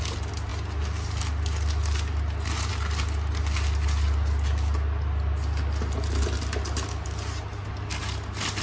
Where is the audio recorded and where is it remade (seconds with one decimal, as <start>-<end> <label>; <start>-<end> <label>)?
0.0-8.6 recorded

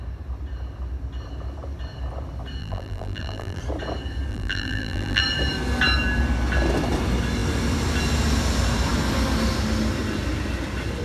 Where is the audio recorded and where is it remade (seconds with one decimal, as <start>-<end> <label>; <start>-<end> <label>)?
0.0-2.6 recorded; 2.6-3.6 remade; 3.6-4.3 recorded; 4.3-5.2 remade; 5.2-11.0 recorded

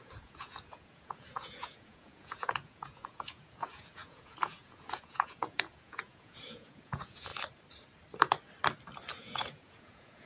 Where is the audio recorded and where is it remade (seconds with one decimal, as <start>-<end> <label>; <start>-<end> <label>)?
0.0-7.3 remade; 7.3-9.1 recorded; 9.1-10.3 remade